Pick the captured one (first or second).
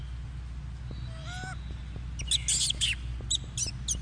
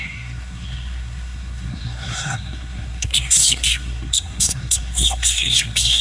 first